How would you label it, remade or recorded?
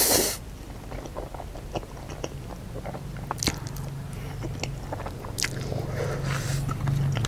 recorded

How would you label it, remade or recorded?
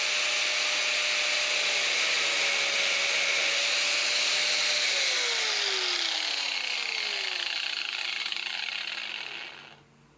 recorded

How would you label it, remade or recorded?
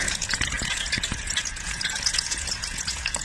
remade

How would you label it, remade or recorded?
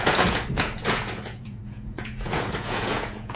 remade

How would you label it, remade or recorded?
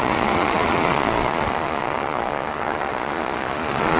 remade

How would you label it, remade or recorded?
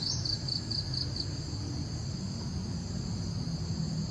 recorded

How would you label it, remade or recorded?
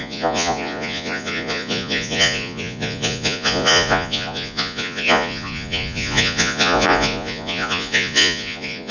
remade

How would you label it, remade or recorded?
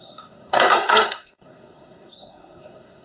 remade